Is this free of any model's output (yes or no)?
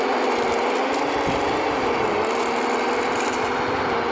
yes